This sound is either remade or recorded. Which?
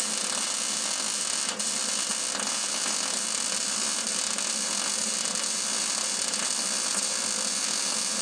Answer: recorded